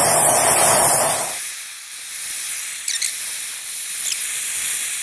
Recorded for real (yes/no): yes